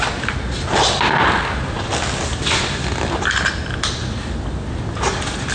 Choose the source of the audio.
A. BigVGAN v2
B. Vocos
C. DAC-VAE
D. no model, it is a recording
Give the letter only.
D